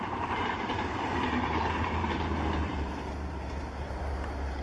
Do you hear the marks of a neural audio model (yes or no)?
yes